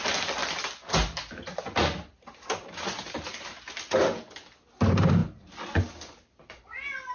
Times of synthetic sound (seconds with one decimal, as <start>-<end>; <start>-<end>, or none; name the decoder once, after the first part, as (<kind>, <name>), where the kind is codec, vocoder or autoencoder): none